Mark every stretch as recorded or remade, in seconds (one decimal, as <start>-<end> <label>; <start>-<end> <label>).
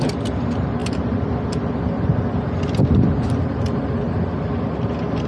0.0-5.3 recorded